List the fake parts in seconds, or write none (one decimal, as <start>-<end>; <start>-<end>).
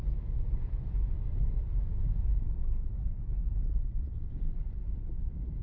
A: 2.2-2.9; 3.5-5.6